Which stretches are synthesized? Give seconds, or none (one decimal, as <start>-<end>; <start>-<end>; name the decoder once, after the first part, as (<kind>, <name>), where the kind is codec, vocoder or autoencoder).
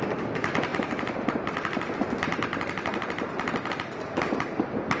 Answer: none